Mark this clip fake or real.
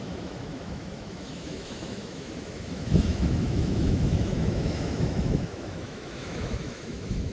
fake